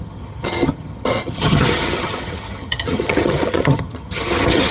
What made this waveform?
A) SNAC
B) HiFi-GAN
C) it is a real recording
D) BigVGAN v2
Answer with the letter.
B